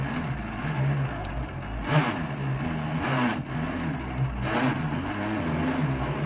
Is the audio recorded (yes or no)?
yes